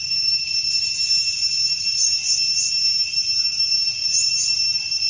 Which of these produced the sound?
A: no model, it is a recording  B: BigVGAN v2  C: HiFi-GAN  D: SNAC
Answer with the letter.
A